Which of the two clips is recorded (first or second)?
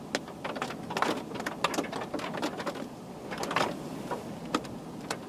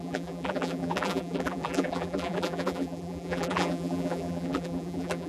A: first